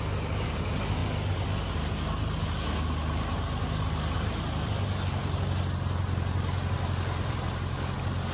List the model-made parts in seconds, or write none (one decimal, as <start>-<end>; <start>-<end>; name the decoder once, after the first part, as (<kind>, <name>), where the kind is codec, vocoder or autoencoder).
none